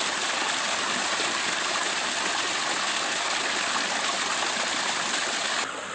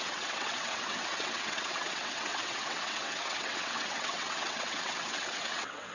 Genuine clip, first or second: first